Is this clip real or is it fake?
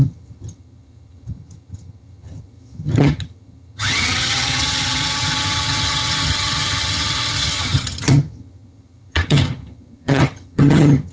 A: fake